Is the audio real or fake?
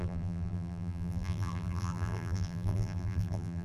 fake